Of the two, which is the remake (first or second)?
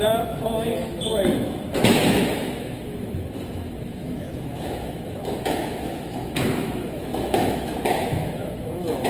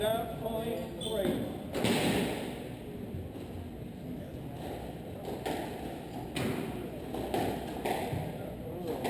first